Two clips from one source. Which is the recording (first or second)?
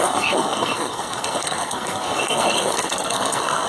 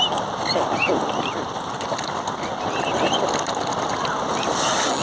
second